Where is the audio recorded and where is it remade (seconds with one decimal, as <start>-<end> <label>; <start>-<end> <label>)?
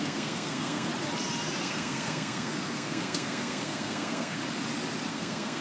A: 0.0-0.9 remade; 0.9-1.6 recorded; 1.6-4.4 remade; 4.4-5.1 recorded; 5.1-5.6 remade